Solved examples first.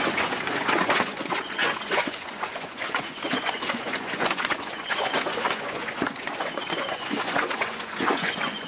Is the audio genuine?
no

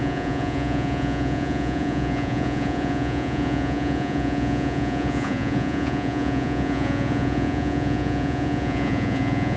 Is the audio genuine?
no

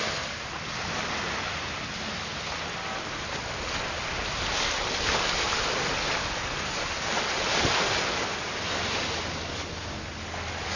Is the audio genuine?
yes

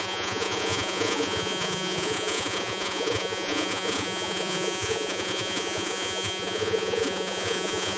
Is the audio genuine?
no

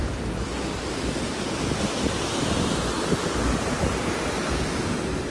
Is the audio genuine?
yes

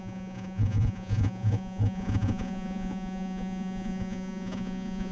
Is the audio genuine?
no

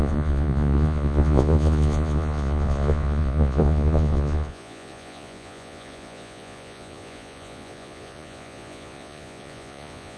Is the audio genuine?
no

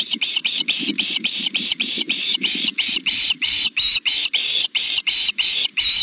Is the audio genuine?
yes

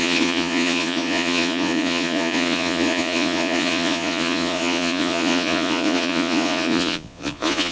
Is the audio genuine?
no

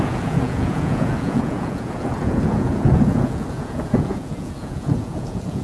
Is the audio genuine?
no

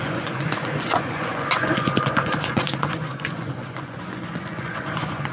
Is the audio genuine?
no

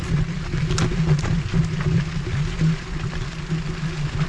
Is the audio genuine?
yes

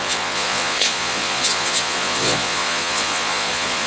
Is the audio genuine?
no